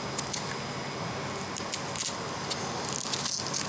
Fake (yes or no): no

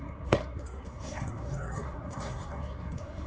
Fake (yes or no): yes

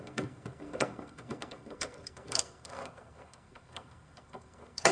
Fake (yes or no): yes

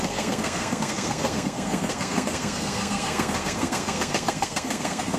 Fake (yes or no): yes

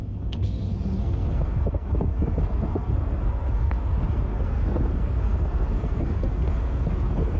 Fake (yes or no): yes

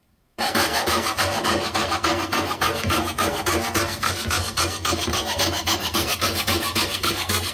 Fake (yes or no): yes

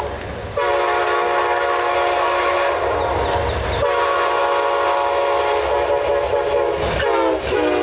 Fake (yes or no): no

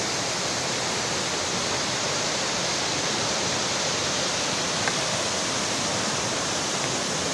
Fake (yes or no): no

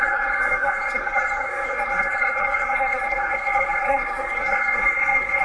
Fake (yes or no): yes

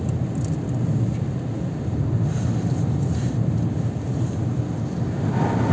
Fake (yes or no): no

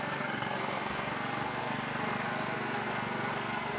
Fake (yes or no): yes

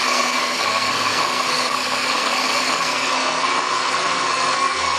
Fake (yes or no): yes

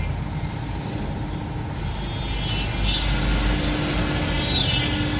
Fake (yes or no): no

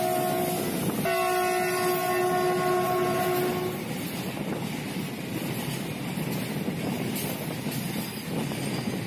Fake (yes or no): no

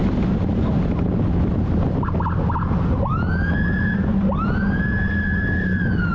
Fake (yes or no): no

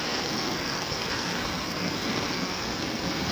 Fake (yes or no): yes